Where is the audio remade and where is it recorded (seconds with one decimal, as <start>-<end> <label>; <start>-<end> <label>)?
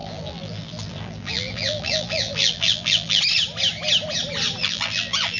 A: 0.0-3.2 remade; 3.2-4.6 recorded; 4.6-5.4 remade